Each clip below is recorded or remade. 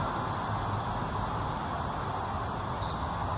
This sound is recorded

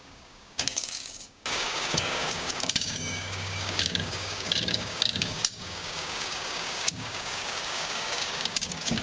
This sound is remade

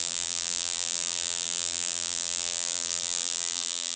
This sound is remade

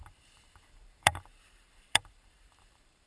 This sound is remade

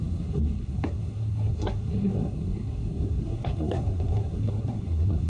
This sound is remade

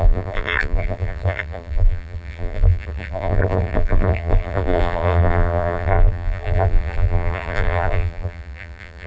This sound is remade